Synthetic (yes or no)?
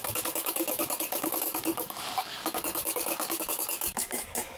yes